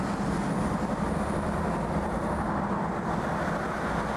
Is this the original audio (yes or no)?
yes